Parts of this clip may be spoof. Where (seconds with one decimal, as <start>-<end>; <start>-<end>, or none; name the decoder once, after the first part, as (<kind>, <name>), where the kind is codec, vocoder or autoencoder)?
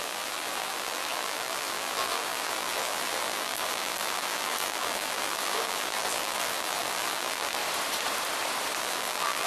0.0-7.6 (vocoder, BigVGAN v2); 8.8-9.5